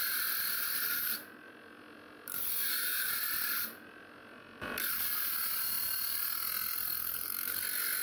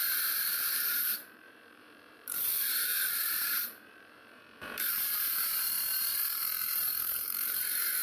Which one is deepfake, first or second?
second